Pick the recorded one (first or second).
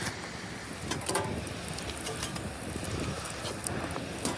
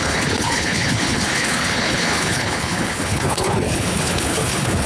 first